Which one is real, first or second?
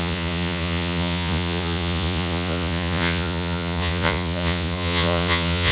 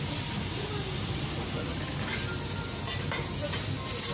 second